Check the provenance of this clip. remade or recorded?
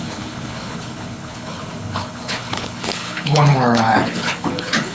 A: remade